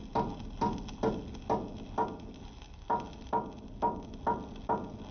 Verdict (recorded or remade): recorded